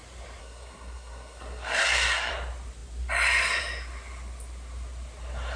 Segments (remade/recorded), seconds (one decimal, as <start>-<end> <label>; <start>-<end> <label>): 0.0-0.4 recorded; 0.4-2.3 remade; 2.3-5.6 recorded